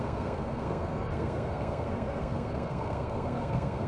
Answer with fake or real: fake